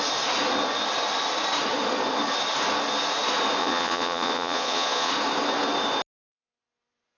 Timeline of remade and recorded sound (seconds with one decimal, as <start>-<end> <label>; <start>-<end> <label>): 0.0-3.6 recorded; 3.6-5.1 remade; 5.1-7.2 recorded